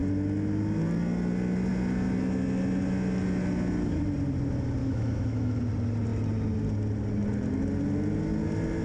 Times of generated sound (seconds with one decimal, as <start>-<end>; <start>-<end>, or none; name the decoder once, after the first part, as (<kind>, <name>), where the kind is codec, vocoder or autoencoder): 4.8-5.6 (autoencoder, DAC-VAE)